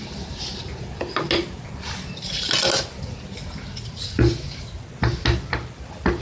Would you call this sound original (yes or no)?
yes